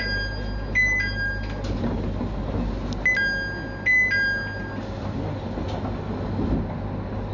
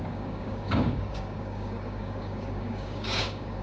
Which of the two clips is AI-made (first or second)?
second